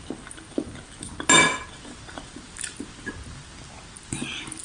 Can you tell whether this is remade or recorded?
recorded